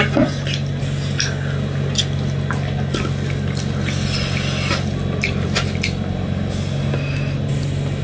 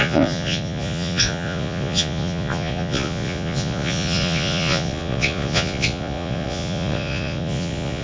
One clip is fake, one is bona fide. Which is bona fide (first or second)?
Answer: first